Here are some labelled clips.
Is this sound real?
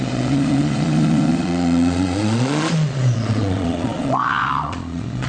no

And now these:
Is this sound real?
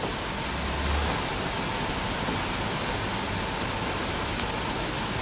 yes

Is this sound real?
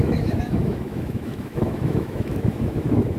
no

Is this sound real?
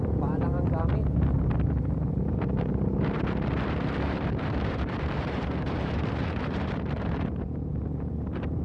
no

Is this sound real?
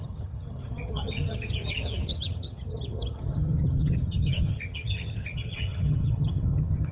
no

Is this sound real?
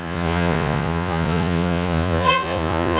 no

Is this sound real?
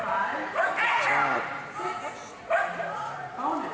yes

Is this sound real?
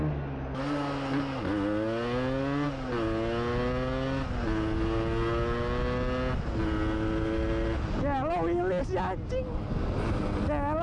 yes